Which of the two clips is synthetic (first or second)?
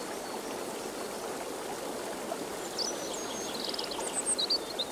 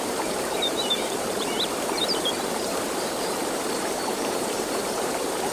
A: second